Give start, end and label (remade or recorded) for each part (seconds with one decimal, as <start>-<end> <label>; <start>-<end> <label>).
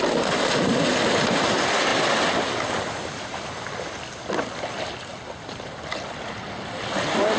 0.0-7.4 recorded